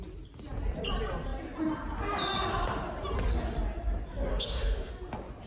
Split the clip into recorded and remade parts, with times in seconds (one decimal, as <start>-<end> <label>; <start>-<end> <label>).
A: 0.0-4.3 recorded; 4.3-4.9 remade; 4.9-5.5 recorded